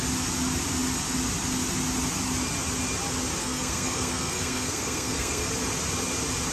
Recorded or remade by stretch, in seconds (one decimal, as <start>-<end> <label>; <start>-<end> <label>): 0.0-3.4 recorded; 3.4-5.5 remade; 5.5-6.5 recorded